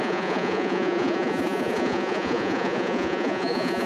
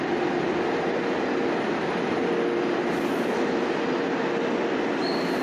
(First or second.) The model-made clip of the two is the first